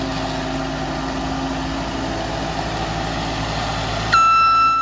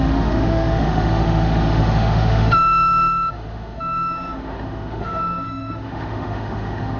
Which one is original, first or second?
first